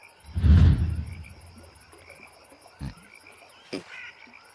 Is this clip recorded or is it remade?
recorded